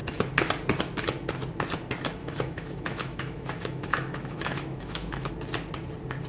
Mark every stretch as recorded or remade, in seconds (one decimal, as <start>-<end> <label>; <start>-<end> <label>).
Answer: 0.0-2.2 recorded; 2.2-5.3 remade; 5.3-6.3 recorded